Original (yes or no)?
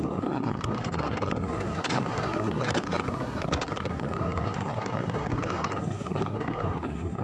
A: no